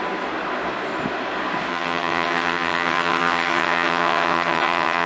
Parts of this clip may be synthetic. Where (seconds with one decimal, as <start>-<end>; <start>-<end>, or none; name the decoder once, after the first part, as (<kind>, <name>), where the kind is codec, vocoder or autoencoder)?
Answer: 1.7-5.1 (vocoder, HiFi-GAN)